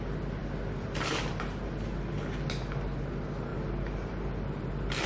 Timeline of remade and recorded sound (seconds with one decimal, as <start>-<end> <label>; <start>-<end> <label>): 0.0-5.1 recorded